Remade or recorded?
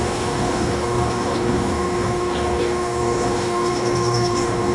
remade